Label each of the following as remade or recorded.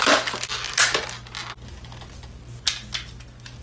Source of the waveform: recorded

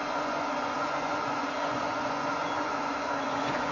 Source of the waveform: remade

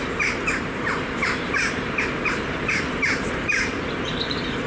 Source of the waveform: remade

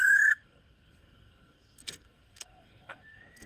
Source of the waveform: remade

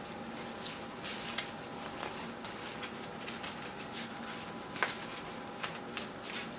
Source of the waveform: recorded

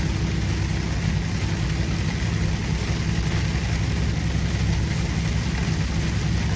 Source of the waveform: recorded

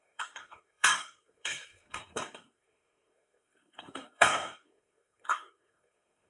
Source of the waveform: remade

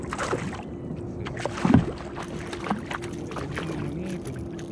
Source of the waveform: recorded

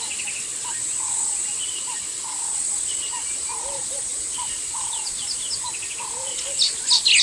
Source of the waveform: recorded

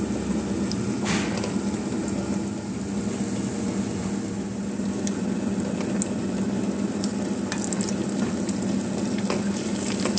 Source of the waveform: recorded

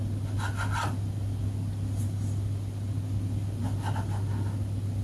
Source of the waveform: recorded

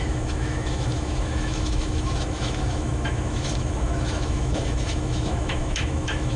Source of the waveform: remade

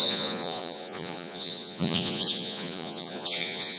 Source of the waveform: remade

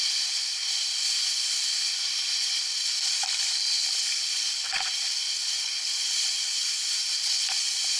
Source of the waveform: recorded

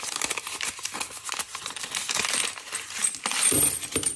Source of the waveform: recorded